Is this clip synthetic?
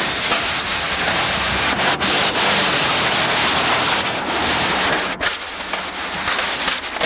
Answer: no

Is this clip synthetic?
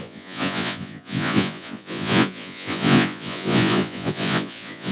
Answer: yes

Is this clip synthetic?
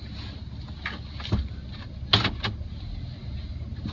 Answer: no